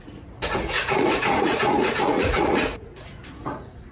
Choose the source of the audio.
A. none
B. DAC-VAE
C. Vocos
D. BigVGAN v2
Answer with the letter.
C